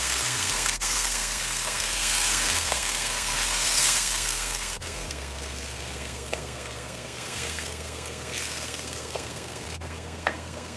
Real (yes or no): no